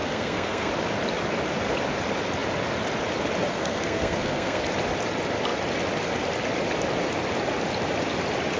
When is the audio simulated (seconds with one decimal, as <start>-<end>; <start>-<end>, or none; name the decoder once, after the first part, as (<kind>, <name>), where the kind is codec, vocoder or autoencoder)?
0.0-0.7 (codec, SNAC); 3.5-4.6